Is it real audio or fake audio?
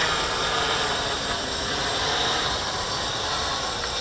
fake